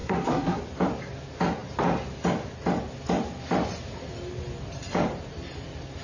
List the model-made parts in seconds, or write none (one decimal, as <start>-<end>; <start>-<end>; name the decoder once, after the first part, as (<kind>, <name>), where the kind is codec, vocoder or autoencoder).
0.0-0.6 (codec, SNAC)